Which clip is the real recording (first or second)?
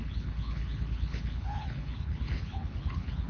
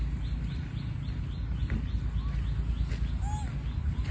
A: second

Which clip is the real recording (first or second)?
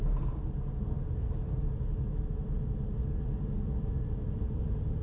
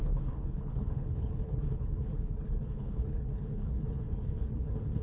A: first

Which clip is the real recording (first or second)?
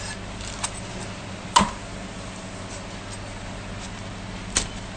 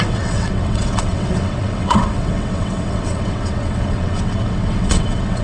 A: first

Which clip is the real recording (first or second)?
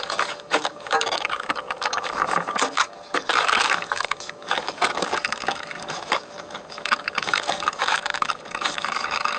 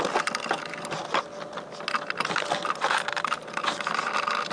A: second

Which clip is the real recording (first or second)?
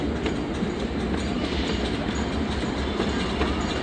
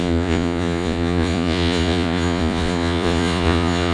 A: first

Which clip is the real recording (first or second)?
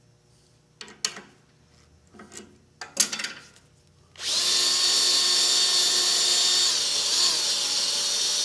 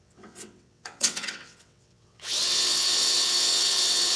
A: first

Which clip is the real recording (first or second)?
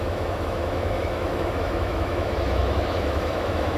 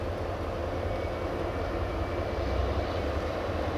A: second